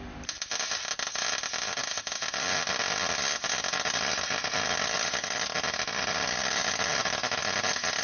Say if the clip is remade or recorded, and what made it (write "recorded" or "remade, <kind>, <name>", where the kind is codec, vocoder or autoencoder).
recorded